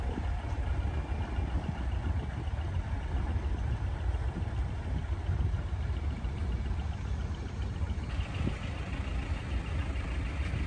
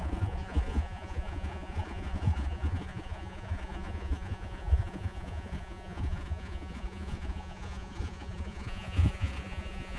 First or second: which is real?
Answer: first